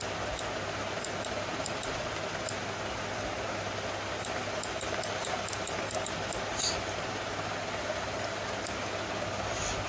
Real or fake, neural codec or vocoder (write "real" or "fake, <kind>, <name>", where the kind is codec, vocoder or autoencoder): real